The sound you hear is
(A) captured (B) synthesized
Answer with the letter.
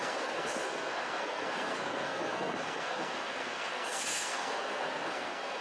B